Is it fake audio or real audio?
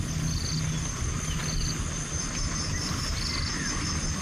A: real